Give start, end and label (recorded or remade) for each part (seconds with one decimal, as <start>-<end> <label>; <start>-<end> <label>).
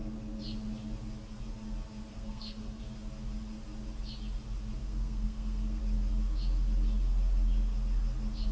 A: 0.0-2.1 recorded; 2.1-2.8 remade; 2.8-4.8 recorded; 4.8-5.8 remade; 5.8-8.5 recorded